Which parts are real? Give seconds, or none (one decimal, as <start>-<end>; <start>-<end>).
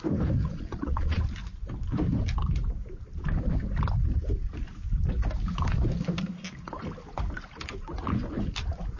0.0-0.4; 1.2-9.0